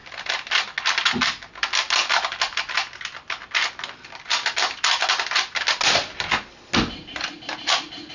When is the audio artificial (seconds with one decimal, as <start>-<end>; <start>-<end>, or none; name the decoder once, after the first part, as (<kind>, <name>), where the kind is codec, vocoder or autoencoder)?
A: none